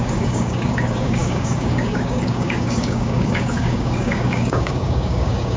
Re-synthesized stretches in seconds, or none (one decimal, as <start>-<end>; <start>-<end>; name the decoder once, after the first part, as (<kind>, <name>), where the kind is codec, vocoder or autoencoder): 0.0-5.6 (codec, DAC)